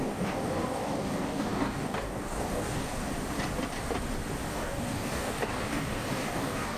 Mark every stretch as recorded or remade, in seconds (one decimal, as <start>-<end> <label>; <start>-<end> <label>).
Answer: 0.0-3.1 remade; 3.1-4.5 recorded; 4.5-6.8 remade